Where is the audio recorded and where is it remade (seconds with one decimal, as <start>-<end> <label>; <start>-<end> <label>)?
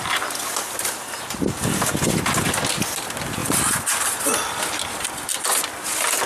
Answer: 0.0-3.4 recorded; 3.4-5.3 remade; 5.3-6.3 recorded